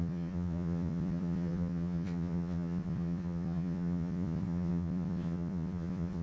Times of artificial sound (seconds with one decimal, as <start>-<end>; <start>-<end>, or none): 0.0-6.2

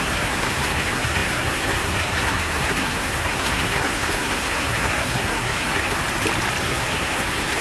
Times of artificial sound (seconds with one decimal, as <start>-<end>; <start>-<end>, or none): 0.0-6.0; 6.6-7.6

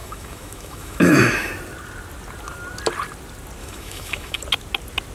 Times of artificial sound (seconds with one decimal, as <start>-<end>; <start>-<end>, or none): 0.0-1.5; 3.6-4.4

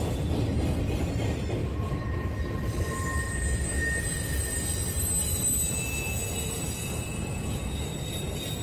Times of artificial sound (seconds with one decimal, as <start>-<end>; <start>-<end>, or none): 6.8-7.4

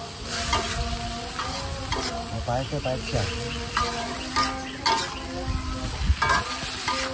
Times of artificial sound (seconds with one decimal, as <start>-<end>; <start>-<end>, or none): none

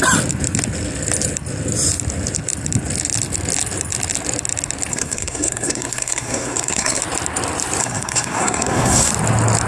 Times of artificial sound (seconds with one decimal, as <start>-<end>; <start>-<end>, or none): 4.9-7.0; 7.8-9.1